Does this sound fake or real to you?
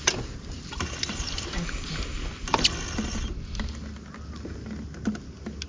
real